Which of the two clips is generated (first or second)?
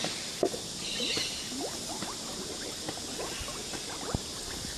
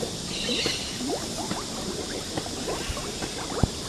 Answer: second